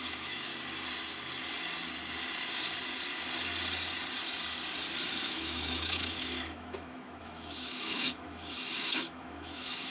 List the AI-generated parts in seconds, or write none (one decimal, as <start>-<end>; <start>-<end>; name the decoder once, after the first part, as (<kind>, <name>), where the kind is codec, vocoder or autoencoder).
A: 0.0-0.5 (autoencoder, DAC-VAE); 5.2-9.9